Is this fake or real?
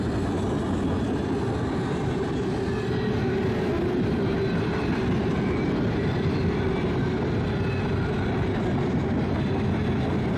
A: real